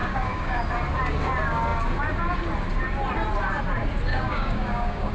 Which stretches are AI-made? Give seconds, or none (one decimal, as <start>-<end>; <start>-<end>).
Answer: 0.0-0.6; 4.1-5.1